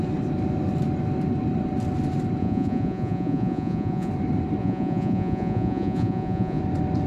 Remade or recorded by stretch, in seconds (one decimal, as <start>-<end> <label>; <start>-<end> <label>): 0.0-2.4 recorded; 2.4-4.1 remade; 4.1-4.6 recorded; 4.6-6.6 remade; 6.6-7.1 recorded